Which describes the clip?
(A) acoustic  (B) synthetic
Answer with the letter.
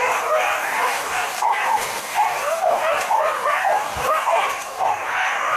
B